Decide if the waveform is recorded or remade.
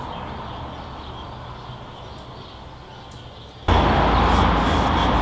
recorded